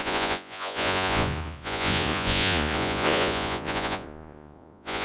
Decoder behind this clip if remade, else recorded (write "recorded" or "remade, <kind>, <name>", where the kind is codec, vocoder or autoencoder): remade, vocoder, Vocos